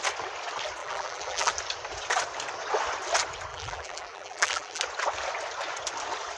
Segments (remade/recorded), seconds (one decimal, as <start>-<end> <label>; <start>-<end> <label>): 0.0-0.8 recorded; 0.8-1.5 remade; 1.5-3.5 recorded; 3.5-4.8 remade; 4.8-6.4 recorded